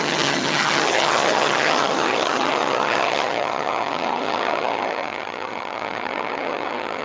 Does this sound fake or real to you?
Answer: fake